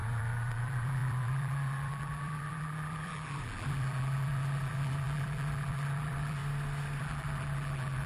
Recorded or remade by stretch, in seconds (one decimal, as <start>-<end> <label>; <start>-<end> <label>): 0.0-6.4 remade; 6.4-7.0 recorded; 7.0-8.1 remade